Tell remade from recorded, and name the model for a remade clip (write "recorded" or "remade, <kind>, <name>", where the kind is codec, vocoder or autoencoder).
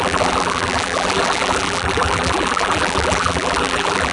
remade, vocoder, BigVGAN v2